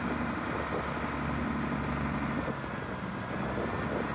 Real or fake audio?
real